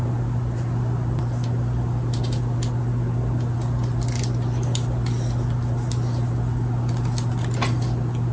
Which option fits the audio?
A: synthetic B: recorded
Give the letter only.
B